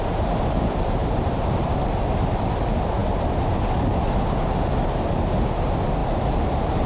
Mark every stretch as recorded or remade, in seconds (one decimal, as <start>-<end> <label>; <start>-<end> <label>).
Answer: 0.0-1.0 recorded; 1.0-1.5 remade; 1.5-6.9 recorded